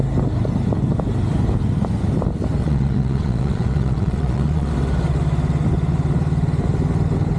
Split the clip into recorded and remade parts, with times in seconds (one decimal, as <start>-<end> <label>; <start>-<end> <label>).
0.0-2.6 recorded; 2.6-4.7 remade; 4.7-7.4 recorded